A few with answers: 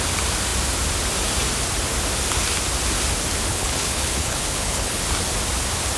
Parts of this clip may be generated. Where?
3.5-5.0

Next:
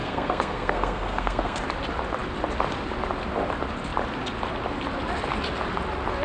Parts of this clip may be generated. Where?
0.0-1.6

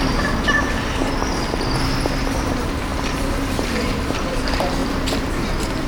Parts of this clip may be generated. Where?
0.0-1.0; 2.2-5.9

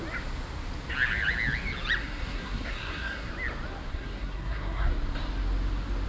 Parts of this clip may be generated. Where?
2.0-3.3; 3.9-4.9

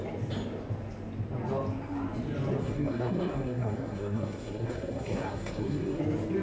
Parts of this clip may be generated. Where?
2.6-6.0

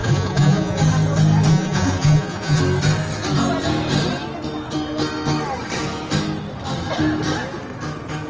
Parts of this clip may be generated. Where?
0.0-0.8; 1.5-2.6

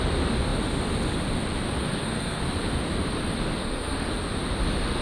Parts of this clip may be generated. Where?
1.8-2.4; 3.6-4.1